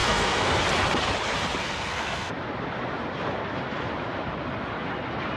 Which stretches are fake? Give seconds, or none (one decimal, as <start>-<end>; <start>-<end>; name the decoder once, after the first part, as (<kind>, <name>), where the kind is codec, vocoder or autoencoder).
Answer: 0.0-0.6 (codec, SNAC); 1.6-2.3

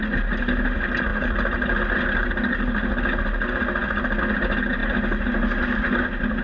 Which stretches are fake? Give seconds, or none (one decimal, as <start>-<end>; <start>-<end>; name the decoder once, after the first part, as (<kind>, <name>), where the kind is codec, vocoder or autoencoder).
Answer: none